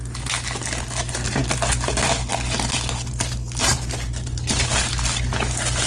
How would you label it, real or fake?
real